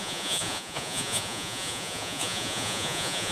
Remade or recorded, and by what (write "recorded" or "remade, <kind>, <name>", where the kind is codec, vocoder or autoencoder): remade, vocoder, Vocos